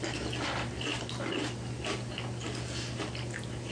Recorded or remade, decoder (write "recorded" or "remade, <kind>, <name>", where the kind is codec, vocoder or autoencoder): recorded